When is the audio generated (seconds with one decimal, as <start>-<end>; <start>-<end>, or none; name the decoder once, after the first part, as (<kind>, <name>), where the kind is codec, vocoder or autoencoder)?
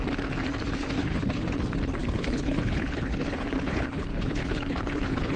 1.0-1.6 (codec, HILCodec); 2.0-5.4